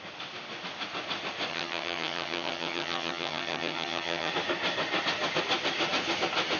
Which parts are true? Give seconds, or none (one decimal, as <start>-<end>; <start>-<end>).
0.0-1.5; 4.3-6.6